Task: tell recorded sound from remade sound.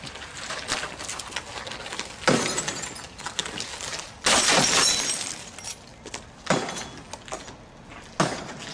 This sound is recorded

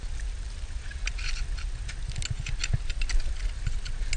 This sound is recorded